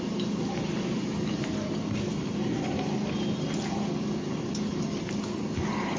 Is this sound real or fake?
real